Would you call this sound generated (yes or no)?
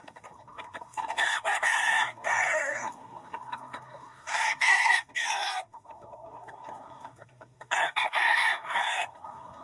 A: yes